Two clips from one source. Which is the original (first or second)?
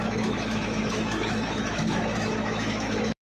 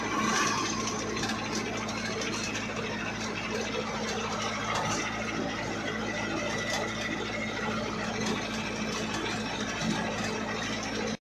second